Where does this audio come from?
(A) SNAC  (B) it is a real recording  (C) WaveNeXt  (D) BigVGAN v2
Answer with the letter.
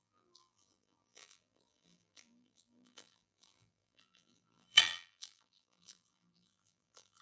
D